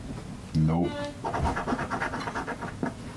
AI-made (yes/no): no